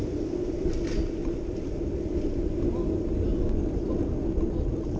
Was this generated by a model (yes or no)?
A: no